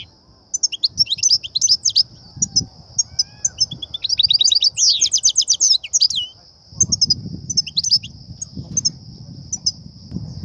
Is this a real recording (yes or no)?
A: yes